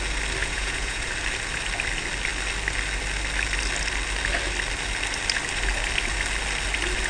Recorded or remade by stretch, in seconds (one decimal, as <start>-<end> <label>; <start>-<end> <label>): 0.0-0.4 recorded; 0.4-1.1 remade; 1.1-7.1 recorded